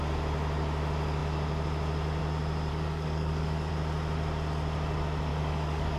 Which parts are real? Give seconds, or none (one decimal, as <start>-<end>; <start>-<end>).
0.0-2.7; 3.7-5.3